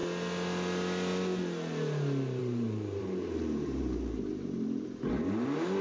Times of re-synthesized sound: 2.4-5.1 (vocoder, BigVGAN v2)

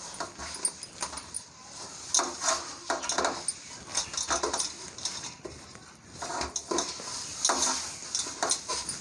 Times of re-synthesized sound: none